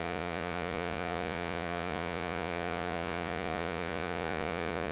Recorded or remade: remade